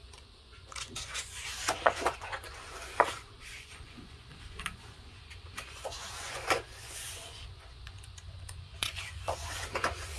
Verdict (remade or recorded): remade